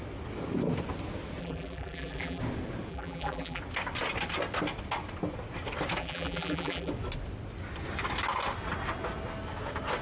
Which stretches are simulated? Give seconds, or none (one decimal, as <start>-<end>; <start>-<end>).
1.4-2.4; 2.9-3.6; 6.0-6.9

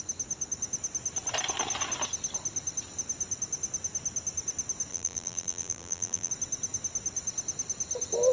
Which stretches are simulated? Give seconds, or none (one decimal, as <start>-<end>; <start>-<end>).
4.9-6.3

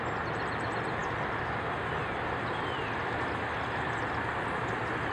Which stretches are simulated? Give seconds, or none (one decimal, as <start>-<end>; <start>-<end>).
none

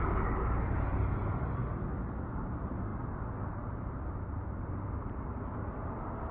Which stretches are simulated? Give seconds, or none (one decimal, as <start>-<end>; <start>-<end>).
0.0-1.6; 2.4-2.9; 3.9-6.3